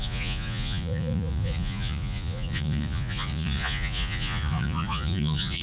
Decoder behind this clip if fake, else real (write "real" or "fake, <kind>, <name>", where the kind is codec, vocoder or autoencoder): fake, vocoder, Vocos